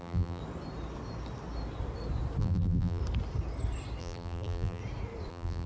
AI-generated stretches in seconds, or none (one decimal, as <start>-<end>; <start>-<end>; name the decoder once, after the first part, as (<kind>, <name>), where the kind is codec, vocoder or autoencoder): 0.0-0.4 (vocoder, BigVGAN v2); 2.4-3.0; 4.0-4.8; 5.3-5.7